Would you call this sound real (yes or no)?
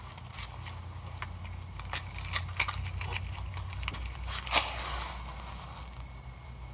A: yes